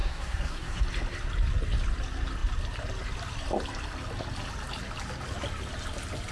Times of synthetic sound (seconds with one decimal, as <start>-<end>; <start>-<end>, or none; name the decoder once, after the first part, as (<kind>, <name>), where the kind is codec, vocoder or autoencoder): 0.0-0.8 (codec, SNAC)